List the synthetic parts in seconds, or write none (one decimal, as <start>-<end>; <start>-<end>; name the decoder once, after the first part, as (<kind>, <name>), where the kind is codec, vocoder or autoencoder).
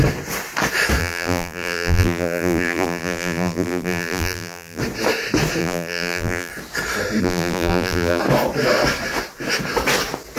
1.0-4.8 (vocoder, BigVGAN v2); 5.6-6.5; 7.2-8.2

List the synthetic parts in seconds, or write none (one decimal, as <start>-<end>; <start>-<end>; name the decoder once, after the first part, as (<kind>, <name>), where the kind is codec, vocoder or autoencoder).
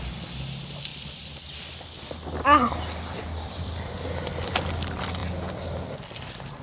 0.9-3.9 (vocoder, BigVGAN v2)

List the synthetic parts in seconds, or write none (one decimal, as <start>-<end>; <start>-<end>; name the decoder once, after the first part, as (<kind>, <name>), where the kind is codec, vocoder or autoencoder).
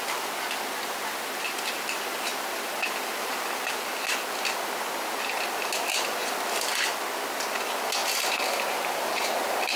none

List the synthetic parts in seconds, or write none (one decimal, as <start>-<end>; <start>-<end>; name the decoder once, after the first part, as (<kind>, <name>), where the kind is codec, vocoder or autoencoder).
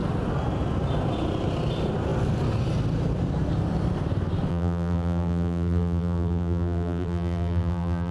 4.5-8.1 (vocoder, BigVGAN v2)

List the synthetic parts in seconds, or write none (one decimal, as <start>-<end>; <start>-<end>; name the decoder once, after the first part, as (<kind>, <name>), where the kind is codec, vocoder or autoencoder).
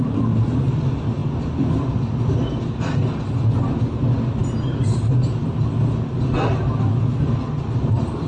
none